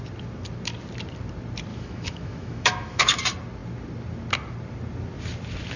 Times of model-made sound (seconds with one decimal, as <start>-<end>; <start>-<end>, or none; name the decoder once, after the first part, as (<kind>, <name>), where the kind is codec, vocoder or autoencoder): 1.7-3.2 (autoencoder, DAC-VAE)